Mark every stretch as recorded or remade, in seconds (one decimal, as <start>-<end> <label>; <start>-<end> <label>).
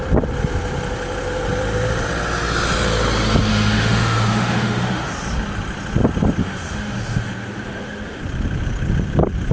0.0-3.5 recorded; 3.5-5.1 remade; 5.1-6.4 recorded; 6.4-8.2 remade; 8.2-9.5 recorded